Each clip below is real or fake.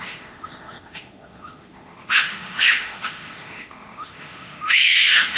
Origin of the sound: fake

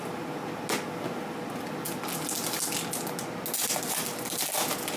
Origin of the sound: real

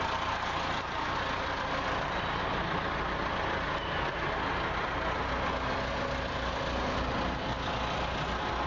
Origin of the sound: real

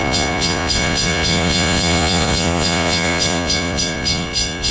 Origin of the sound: fake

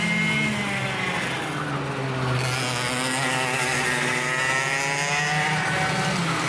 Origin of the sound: real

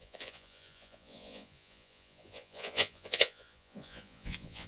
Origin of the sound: fake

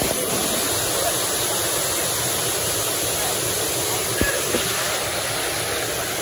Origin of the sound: real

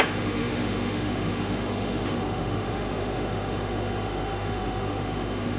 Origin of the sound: fake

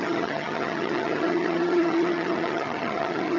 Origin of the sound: fake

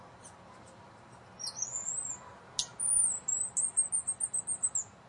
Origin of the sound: real